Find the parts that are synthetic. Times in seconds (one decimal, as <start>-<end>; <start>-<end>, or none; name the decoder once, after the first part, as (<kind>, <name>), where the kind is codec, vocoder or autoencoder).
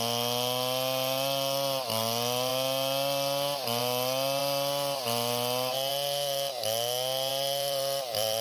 7.3-8.4 (vocoder, BigVGAN v2)